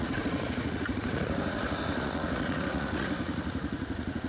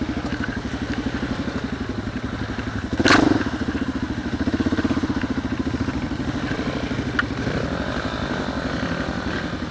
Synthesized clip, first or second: first